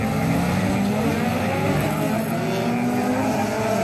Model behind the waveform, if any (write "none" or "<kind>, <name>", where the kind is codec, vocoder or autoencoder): none